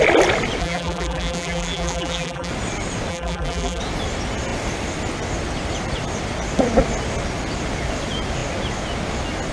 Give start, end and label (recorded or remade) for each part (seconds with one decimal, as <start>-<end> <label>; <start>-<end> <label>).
0.0-0.6 recorded; 0.6-2.5 remade; 2.5-3.1 recorded; 3.1-3.8 remade; 3.8-9.5 recorded